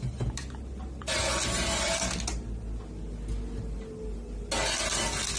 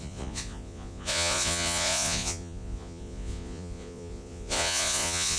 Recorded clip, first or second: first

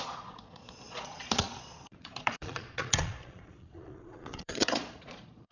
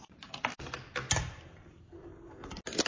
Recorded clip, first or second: second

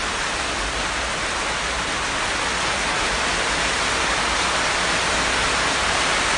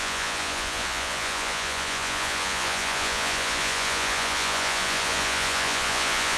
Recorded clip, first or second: first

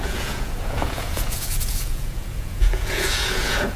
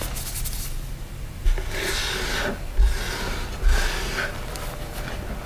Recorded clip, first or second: second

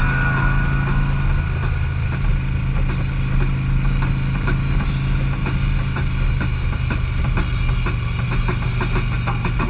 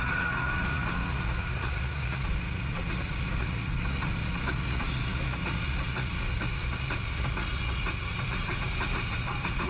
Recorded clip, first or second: first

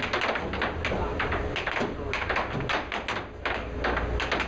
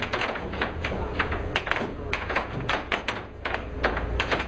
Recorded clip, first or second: first